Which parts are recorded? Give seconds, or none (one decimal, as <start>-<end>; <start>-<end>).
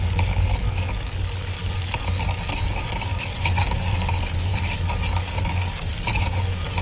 none